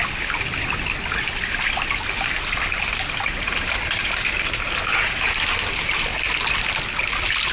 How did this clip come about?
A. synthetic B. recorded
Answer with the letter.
B